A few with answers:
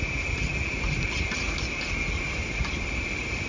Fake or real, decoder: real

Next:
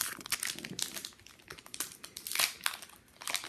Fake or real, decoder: real